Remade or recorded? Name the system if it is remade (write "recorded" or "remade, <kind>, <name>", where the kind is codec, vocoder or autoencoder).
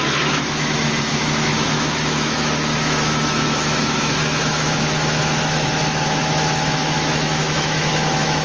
remade, autoencoder, DAC-VAE